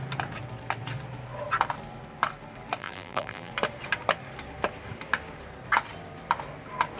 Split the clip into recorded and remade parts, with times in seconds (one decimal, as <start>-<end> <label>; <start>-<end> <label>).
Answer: 0.0-2.8 recorded; 2.8-3.5 remade; 3.5-7.0 recorded